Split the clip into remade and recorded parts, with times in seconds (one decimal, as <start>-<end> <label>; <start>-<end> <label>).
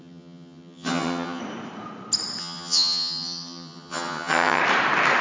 0.0-1.4 remade; 1.4-2.4 recorded; 2.4-4.6 remade; 4.6-5.2 recorded